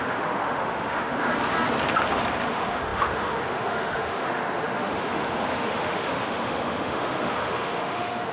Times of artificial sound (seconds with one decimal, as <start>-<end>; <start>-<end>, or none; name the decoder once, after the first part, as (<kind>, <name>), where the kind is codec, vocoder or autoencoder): 0.0-1.3 (autoencoder, DAC-VAE); 2.5-8.3